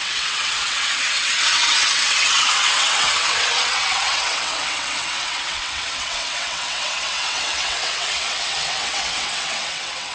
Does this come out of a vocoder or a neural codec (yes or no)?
yes